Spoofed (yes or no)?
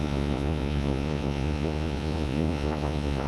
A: yes